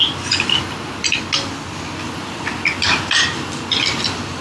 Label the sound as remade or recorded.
recorded